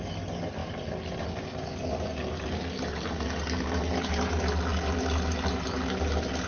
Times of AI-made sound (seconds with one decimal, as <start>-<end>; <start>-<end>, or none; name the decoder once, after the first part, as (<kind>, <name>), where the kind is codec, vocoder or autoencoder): none